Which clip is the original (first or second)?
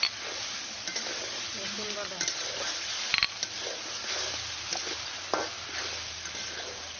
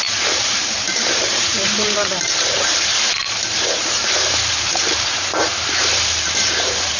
first